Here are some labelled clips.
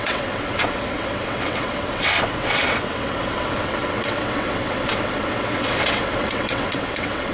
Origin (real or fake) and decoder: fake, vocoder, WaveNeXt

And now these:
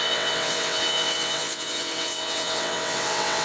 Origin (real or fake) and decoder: fake, vocoder, WaveNeXt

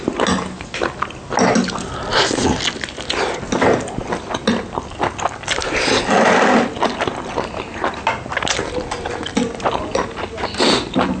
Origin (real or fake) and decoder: real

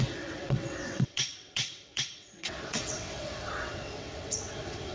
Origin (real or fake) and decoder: fake, vocoder, WaveNeXt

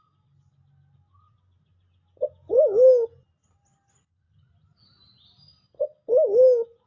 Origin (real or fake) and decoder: real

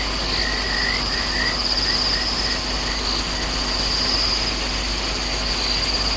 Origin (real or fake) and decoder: real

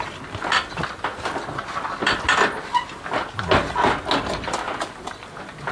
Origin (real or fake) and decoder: real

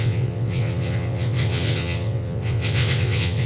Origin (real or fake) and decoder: fake, vocoder, WaveNeXt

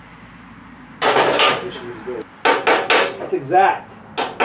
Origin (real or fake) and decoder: real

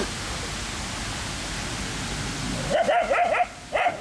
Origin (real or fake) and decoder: real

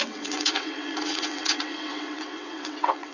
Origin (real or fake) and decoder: fake, vocoder, WaveNeXt